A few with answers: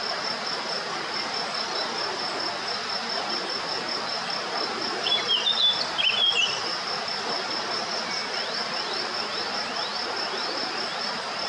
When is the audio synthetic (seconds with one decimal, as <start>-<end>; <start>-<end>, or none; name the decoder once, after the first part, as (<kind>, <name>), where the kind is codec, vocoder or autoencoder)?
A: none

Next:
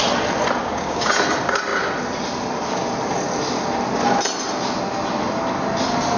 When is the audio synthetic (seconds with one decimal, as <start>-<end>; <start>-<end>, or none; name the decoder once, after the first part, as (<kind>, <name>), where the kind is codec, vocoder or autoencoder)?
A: 0.6-1.1 (codec, DAC)

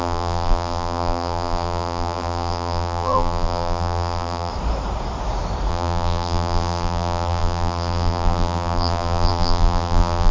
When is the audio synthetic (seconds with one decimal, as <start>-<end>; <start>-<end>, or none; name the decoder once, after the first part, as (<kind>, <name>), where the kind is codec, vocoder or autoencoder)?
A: 0.0-4.5 (vocoder, BigVGAN v2); 5.7-10.3

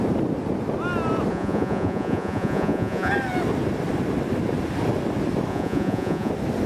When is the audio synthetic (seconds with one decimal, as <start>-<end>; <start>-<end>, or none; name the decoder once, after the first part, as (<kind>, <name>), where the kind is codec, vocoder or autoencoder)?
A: 1.3-3.1 (vocoder, Vocos); 5.5-6.3